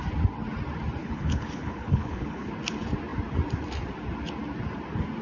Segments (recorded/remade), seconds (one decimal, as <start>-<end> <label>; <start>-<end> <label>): 0.0-1.0 recorded; 1.0-2.5 remade; 2.5-5.2 recorded